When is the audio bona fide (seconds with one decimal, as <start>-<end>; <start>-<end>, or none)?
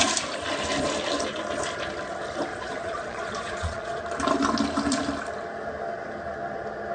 0.0-2.5; 4.0-6.9